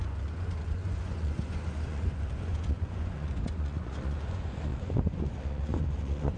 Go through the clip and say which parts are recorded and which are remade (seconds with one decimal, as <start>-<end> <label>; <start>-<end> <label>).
0.0-6.4 remade

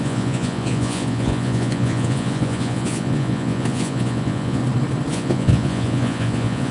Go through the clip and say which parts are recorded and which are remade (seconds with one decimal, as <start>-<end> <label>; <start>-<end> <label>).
0.0-4.6 remade; 4.6-5.1 recorded; 5.1-6.7 remade